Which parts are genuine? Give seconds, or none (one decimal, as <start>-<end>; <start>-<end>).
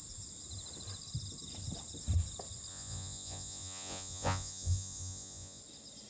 0.0-2.7; 5.6-6.1